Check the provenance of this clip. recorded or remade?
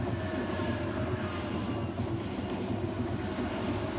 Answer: recorded